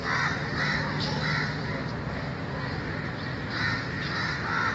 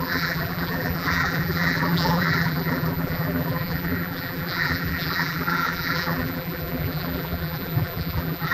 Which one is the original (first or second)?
first